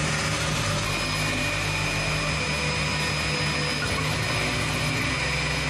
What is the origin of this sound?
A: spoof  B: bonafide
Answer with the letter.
B